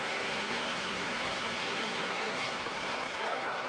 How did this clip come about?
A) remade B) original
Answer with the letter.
A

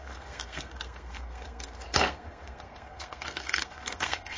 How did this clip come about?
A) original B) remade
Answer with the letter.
B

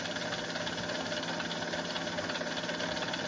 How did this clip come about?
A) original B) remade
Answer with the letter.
A